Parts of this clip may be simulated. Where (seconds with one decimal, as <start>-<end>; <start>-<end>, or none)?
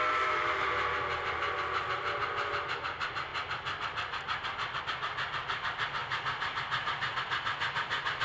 none